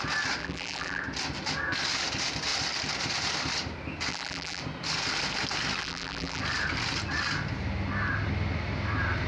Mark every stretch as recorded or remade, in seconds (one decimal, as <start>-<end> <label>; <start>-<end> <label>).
0.0-0.4 recorded; 0.4-1.0 remade; 1.0-4.1 recorded; 4.1-4.6 remade; 4.6-5.8 recorded; 5.8-6.4 remade; 6.4-9.3 recorded